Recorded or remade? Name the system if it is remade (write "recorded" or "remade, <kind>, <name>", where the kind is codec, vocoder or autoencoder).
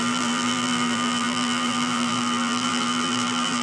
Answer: remade, vocoder, BigVGAN v2